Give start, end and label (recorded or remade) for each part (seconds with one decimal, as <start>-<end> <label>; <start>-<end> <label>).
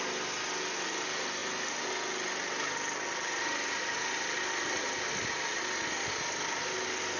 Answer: 0.0-7.2 recorded